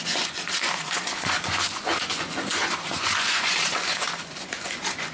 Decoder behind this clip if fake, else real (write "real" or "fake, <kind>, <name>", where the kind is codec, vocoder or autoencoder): fake, vocoder, Vocos